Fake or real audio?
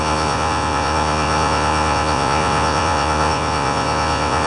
fake